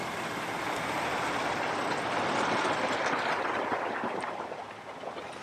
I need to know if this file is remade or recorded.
recorded